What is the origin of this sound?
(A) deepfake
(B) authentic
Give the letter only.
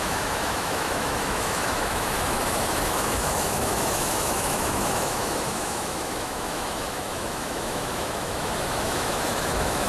A